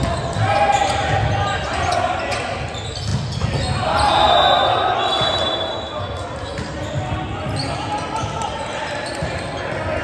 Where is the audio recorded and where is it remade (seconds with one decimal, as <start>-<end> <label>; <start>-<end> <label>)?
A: 0.0-10.0 recorded